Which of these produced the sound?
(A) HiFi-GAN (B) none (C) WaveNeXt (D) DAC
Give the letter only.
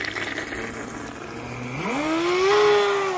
B